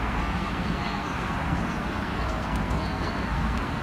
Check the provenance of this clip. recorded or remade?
remade